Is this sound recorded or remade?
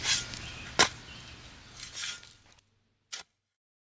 recorded